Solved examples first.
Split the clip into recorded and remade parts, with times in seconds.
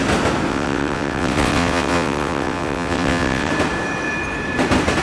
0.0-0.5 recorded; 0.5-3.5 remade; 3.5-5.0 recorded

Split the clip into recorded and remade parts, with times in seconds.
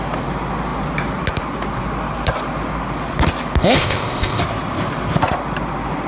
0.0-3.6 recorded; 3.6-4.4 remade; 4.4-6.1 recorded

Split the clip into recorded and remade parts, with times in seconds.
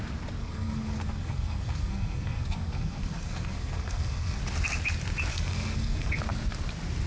0.0-0.4 recorded; 0.4-4.4 remade; 4.4-5.3 recorded; 5.3-6.2 remade; 6.2-7.1 recorded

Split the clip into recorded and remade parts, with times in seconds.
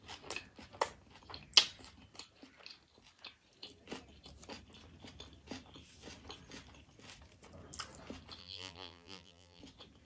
0.0-8.4 recorded; 8.4-9.6 remade; 9.6-10.1 recorded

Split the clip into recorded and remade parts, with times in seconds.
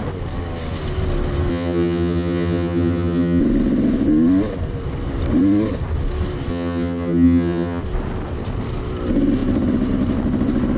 0.0-1.5 recorded; 1.5-3.4 remade; 3.4-6.5 recorded; 6.5-7.8 remade; 7.8-10.8 recorded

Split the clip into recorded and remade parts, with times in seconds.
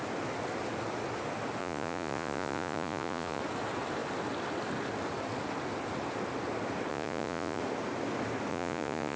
0.0-1.6 recorded; 1.6-3.4 remade; 3.4-6.9 recorded; 6.9-7.6 remade; 7.6-8.5 recorded; 8.5-9.2 remade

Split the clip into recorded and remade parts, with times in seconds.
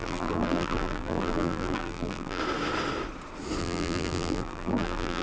0.0-2.4 remade; 2.4-3.6 recorded; 3.6-5.2 remade